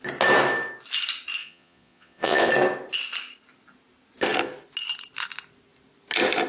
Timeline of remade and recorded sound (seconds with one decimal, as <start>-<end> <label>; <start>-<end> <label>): 0.0-1.4 recorded; 1.4-2.5 remade; 2.5-6.5 recorded